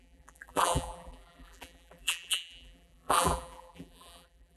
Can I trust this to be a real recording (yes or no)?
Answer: no